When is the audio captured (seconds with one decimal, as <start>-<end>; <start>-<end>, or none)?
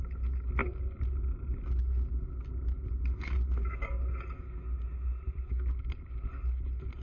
0.0-7.0